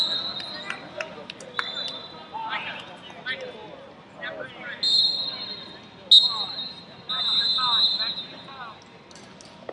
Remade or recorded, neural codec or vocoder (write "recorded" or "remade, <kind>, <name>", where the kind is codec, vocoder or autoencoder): recorded